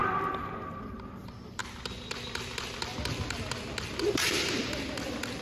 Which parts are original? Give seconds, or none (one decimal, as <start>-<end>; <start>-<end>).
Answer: 0.0-5.4